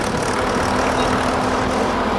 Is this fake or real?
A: real